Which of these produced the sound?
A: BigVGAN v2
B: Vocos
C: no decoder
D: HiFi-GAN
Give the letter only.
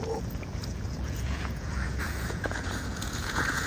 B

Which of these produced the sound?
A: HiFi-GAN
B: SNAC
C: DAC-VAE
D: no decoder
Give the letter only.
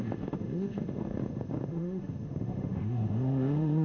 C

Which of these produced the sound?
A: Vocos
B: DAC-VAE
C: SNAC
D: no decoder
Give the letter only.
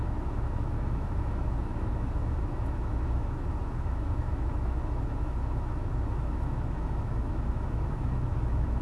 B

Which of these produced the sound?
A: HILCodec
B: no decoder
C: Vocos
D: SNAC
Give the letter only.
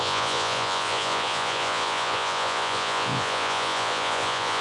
C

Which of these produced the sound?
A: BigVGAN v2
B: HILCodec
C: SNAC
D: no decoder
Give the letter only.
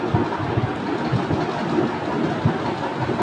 D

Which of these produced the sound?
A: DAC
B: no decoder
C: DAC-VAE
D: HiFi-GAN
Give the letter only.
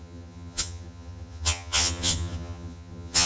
D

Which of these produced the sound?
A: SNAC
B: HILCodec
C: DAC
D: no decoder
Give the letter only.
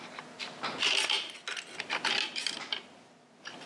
D